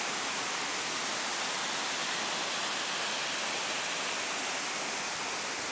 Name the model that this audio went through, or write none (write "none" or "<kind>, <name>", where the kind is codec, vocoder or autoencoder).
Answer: none